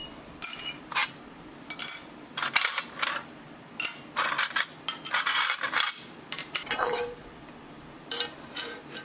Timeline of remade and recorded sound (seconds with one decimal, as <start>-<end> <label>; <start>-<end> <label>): 0.0-0.5 recorded; 0.5-1.0 remade; 1.0-5.1 recorded; 5.1-7.2 remade; 7.2-8.5 recorded; 8.5-9.0 remade